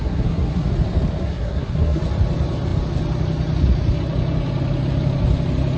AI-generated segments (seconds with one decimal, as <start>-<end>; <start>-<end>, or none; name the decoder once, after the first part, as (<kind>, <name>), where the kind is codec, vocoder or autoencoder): 0.0-0.7 (codec, SNAC); 1.2-2.0